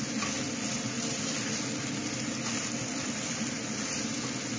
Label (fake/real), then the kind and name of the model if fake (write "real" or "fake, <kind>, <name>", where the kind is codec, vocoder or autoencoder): real